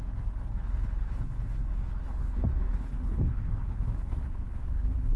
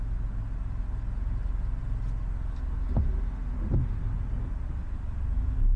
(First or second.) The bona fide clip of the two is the second